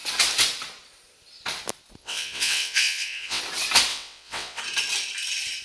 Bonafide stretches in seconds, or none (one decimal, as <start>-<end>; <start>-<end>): 0.0-2.0; 3.4-3.9; 4.6-5.6